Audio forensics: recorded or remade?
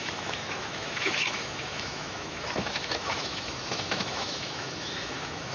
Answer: remade